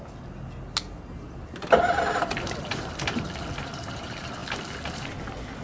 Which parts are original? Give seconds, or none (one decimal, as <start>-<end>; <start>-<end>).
0.0-1.4; 2.3-5.6